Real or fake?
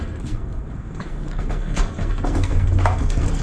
fake